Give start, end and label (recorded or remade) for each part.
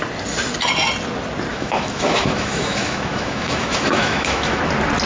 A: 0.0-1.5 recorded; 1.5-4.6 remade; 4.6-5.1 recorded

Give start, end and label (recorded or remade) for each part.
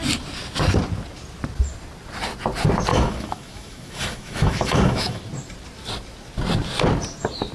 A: 0.0-2.9 recorded; 2.9-5.2 remade; 5.2-7.5 recorded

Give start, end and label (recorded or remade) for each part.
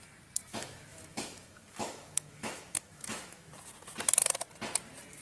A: 0.0-0.5 recorded; 0.5-3.5 remade; 3.5-5.2 recorded